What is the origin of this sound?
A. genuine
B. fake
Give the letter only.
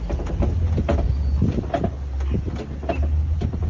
A